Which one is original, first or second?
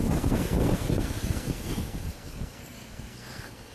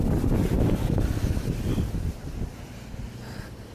second